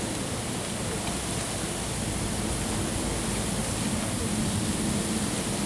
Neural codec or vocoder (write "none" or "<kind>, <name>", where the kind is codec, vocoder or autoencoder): none